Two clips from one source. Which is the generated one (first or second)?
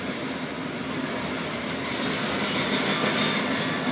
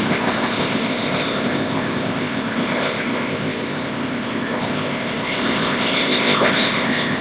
second